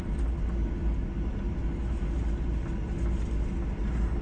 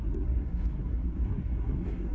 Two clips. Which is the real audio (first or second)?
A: first